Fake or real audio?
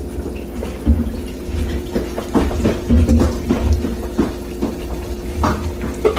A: real